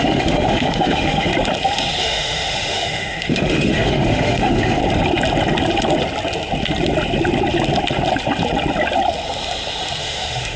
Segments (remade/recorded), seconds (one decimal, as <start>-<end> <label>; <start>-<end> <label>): 0.0-1.3 remade; 1.3-2.0 recorded; 2.0-4.8 remade; 4.8-10.0 recorded; 10.0-10.6 remade